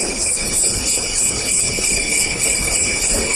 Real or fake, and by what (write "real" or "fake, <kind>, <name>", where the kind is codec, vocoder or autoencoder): fake, codec, HILCodec